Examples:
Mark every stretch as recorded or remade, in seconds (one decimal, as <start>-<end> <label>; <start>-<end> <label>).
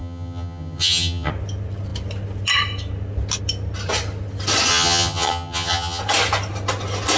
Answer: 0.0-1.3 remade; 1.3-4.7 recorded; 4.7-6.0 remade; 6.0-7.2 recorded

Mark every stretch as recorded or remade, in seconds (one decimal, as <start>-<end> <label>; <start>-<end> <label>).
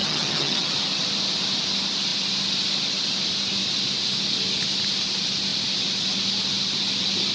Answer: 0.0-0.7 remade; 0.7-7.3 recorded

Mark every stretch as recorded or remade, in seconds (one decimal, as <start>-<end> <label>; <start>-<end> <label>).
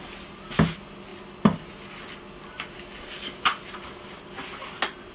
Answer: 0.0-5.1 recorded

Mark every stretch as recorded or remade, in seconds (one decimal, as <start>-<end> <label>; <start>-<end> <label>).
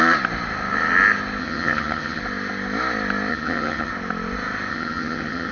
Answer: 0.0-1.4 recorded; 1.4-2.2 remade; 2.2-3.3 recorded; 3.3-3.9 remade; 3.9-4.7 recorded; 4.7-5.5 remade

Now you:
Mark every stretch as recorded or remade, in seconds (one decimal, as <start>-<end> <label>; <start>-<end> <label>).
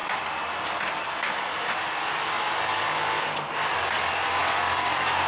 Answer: 0.0-5.3 recorded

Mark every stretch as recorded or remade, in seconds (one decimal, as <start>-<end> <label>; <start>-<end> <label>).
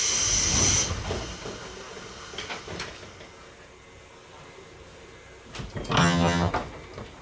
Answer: 0.0-6.0 recorded; 6.0-6.5 remade; 6.5-7.2 recorded